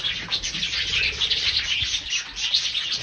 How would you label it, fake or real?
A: real